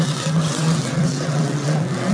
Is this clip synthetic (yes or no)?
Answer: yes